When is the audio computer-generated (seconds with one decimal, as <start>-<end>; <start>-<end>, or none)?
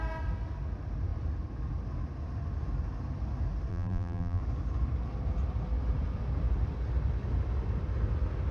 3.7-4.4